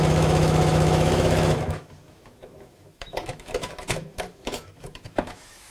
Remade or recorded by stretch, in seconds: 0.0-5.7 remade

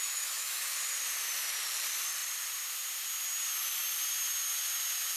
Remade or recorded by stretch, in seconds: 0.0-0.6 remade; 0.6-5.2 recorded

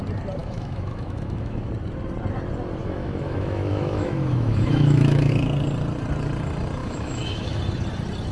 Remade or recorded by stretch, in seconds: 0.0-0.4 recorded; 0.4-1.7 remade; 1.7-2.8 recorded; 2.8-5.3 remade; 5.3-6.8 recorded; 6.8-7.6 remade; 7.6-8.3 recorded